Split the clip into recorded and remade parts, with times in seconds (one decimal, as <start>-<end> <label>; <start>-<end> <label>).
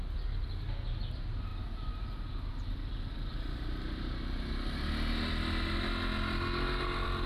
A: 0.0-7.3 recorded